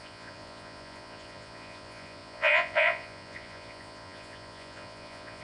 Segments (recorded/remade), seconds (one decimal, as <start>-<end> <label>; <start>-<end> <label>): 0.0-5.4 remade